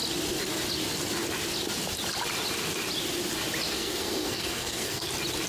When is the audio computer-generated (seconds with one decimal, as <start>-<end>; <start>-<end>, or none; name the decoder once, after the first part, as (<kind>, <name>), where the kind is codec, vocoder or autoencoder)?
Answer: 3.7-5.1 (codec, SNAC)

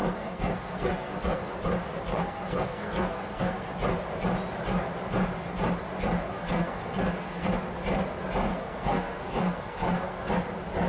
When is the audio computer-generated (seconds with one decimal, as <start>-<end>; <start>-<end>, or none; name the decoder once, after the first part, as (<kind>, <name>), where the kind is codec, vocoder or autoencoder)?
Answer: 0.0-1.5 (codec, SNAC); 2.1-3.7; 6.3-7.5; 8.5-10.3

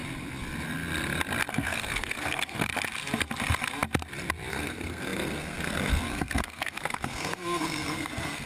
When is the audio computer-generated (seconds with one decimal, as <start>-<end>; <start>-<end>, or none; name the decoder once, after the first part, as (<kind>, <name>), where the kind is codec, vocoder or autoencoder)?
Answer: 1.5-2.7 (codec, SNAC); 4.5-8.5